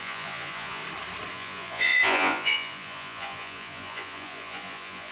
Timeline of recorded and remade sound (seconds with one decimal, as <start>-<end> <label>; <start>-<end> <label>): 0.0-0.8 remade; 0.8-1.3 recorded; 1.3-5.1 remade